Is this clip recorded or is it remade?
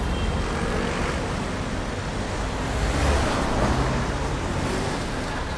recorded